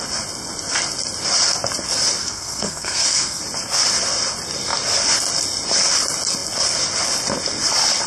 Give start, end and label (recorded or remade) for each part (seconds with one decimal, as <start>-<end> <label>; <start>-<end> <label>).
0.0-2.2 recorded; 2.2-3.4 remade; 3.4-8.1 recorded